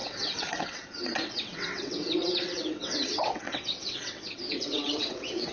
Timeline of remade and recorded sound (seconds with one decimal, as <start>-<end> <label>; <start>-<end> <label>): 0.0-5.5 remade